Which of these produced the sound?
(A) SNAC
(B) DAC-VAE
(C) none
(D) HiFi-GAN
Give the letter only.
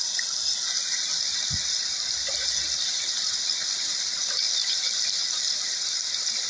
C